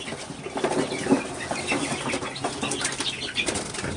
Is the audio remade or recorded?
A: recorded